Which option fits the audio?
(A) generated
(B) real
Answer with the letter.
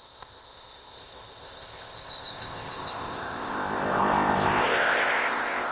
A